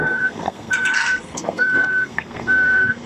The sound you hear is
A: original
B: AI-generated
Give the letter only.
B